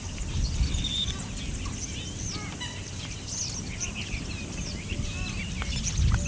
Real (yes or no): yes